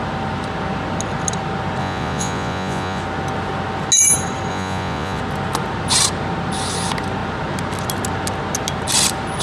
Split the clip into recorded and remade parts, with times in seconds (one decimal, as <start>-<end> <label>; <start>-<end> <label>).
0.0-1.8 recorded; 1.8-3.0 remade; 3.0-4.5 recorded; 4.5-5.2 remade; 5.2-9.4 recorded